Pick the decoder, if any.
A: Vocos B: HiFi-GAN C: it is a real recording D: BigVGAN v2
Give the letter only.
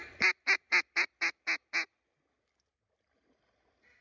C